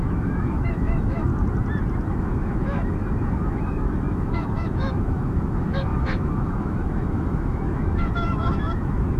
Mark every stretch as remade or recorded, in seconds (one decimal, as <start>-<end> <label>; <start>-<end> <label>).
0.0-1.3 remade; 1.3-2.1 recorded; 2.1-9.2 remade